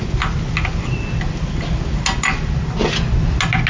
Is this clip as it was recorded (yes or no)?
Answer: yes